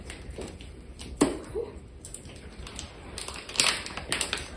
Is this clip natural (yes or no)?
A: yes